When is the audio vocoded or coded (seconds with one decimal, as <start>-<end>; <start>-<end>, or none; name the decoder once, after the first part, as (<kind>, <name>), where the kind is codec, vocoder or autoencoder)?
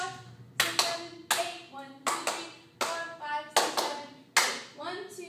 none